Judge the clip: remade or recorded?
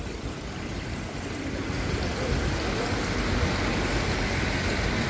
recorded